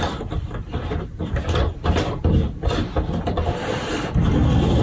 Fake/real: real